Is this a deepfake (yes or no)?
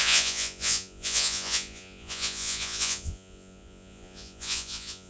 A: yes